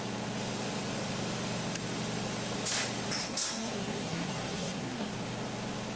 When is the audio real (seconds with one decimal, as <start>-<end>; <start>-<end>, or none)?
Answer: 0.0-3.2; 5.1-6.0